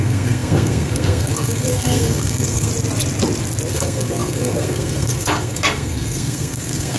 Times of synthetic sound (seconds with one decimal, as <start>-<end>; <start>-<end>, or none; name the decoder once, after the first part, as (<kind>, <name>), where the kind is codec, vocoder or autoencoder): 0.0-2.7 (codec, SNAC); 3.7-7.0